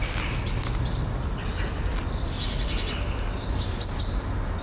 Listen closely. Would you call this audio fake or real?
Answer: real